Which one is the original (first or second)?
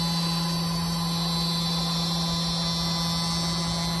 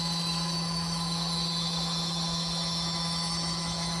first